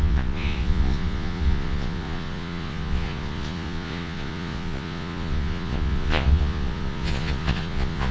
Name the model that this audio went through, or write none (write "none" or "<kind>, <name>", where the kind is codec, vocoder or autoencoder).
vocoder, Vocos